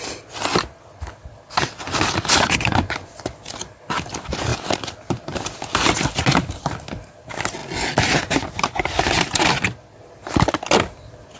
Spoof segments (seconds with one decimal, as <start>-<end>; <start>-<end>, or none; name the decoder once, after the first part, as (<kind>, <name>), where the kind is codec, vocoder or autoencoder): none